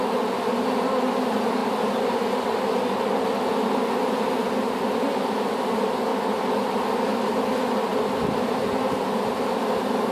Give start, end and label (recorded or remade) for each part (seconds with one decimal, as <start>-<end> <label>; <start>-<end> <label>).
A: 0.0-10.1 recorded